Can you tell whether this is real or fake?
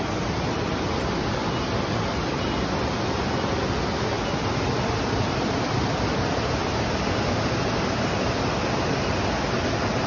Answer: real